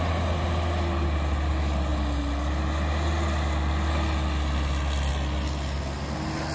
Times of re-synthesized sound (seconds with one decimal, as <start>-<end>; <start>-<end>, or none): none